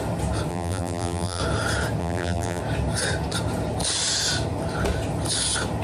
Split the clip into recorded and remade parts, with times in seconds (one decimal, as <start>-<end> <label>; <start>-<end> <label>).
0.0-0.5 recorded; 0.5-1.4 remade; 1.4-2.0 recorded; 2.0-2.6 remade; 2.6-5.8 recorded

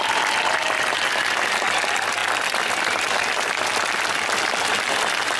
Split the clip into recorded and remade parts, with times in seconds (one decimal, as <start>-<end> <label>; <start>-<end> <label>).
0.0-5.4 recorded

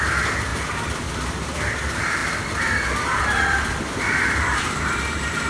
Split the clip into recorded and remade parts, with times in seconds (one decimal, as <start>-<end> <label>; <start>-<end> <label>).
0.0-5.5 remade

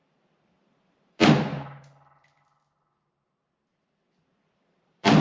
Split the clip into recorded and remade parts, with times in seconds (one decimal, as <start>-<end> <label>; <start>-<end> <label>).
0.0-1.3 remade; 1.3-3.7 recorded; 3.7-5.2 remade

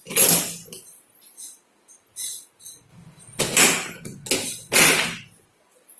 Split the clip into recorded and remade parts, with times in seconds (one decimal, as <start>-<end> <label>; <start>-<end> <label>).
0.0-6.0 recorded